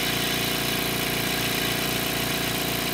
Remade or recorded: recorded